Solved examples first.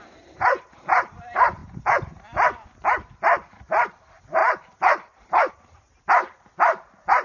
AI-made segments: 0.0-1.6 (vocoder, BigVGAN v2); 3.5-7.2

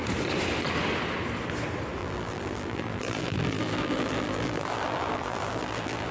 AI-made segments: 2.0-6.1 (vocoder, BigVGAN v2)